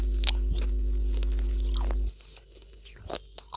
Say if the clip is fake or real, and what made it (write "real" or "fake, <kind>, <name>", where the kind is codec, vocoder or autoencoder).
real